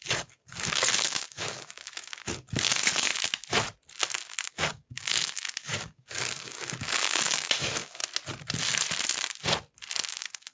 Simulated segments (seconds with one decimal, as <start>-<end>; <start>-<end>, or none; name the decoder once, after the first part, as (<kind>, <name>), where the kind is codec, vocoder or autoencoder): 0.0-3.1 (codec, DAC); 4.5-8.0; 10.1-10.5